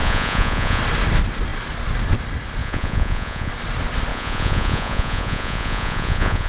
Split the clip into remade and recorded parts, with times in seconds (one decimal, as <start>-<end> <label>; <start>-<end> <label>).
0.0-0.8 remade; 0.8-2.6 recorded; 2.6-3.5 remade; 3.5-4.1 recorded; 4.1-6.5 remade

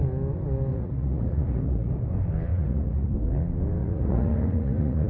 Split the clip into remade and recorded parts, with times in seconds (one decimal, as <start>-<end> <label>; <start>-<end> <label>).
0.0-0.7 recorded; 0.7-1.9 remade; 1.9-2.5 recorded; 2.5-3.1 remade; 3.1-3.8 recorded; 3.8-5.1 remade